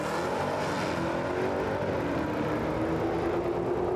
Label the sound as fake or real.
real